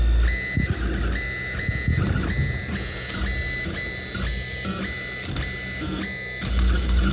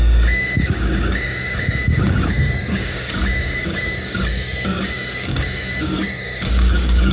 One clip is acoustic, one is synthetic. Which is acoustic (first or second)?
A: first